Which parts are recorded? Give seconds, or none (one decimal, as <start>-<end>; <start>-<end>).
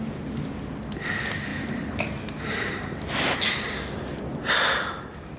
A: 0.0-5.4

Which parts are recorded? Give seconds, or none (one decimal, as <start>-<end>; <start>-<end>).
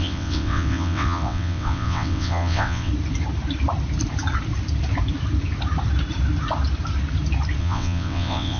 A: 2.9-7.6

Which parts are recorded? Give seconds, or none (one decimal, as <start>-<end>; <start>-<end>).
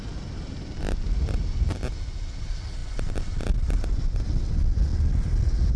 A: 0.0-5.8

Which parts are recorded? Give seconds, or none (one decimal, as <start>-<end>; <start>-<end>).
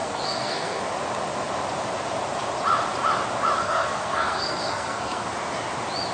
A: 0.8-3.6; 5.2-6.1